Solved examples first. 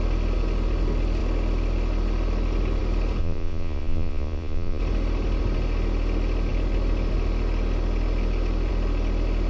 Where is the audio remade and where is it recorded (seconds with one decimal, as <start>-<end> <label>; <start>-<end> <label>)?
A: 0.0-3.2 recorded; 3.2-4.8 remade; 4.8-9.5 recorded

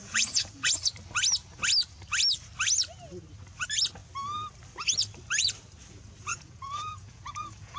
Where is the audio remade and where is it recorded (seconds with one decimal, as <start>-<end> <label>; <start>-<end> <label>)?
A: 0.0-0.7 remade; 0.7-6.3 recorded; 6.3-7.8 remade

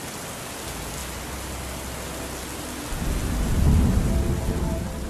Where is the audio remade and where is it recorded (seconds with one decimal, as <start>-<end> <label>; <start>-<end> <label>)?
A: 0.0-5.1 recorded